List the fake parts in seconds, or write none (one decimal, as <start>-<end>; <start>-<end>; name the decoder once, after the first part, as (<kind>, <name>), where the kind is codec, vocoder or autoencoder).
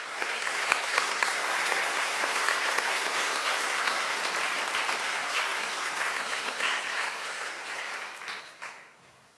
0.0-4.2 (codec, SNAC); 5.0-7.9; 8.4-9.4